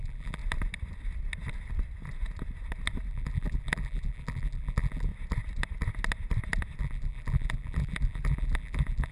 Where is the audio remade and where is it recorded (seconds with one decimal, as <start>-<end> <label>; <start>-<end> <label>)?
0.0-0.4 remade; 0.4-3.1 recorded; 3.1-5.1 remade; 5.1-6.8 recorded; 6.8-9.1 remade